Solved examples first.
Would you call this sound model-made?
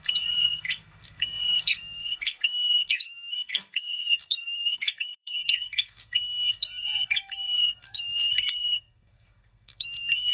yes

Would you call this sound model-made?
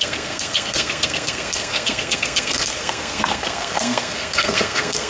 yes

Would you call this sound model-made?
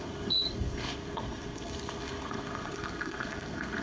yes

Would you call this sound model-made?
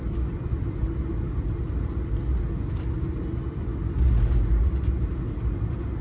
no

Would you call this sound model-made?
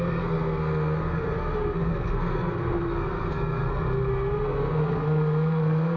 yes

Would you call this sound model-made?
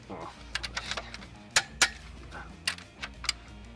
no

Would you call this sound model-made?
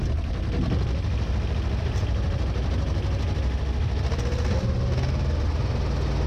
no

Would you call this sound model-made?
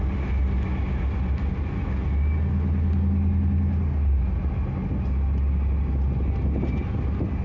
no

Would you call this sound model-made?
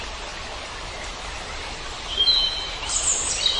no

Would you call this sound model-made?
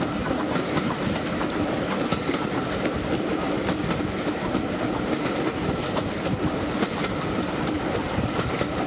no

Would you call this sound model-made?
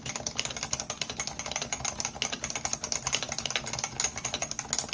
no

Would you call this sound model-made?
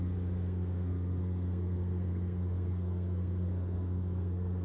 yes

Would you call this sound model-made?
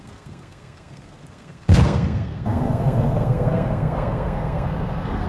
yes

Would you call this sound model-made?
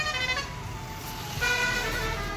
no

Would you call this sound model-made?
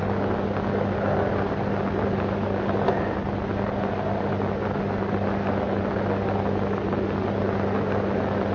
no